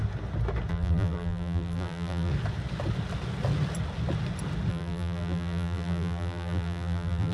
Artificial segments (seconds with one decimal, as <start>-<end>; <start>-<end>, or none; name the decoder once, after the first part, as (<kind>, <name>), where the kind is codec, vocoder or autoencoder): 0.7-2.3 (vocoder, BigVGAN v2); 4.7-7.3